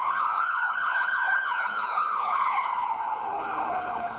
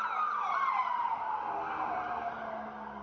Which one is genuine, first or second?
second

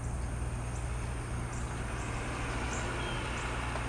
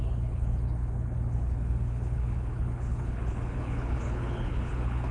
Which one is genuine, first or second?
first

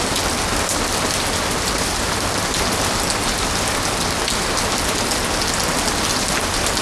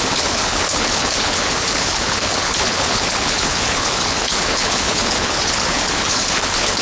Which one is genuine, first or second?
first